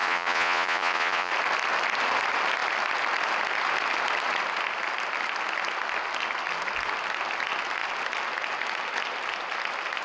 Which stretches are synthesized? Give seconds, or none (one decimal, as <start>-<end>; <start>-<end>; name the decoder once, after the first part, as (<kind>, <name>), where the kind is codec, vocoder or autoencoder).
0.0-1.3 (vocoder, Vocos)